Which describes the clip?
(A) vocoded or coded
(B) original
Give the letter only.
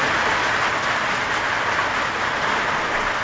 B